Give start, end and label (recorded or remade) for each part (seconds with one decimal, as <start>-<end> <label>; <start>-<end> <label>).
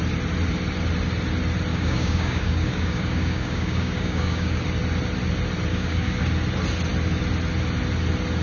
0.0-1.7 recorded; 1.7-4.6 remade; 4.6-5.7 recorded; 5.7-6.2 remade; 6.2-8.4 recorded